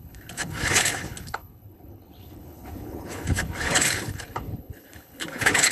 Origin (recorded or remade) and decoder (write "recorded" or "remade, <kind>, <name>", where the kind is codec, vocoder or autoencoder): remade, codec, HILCodec